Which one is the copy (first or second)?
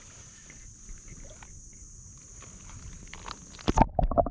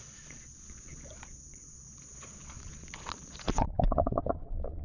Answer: second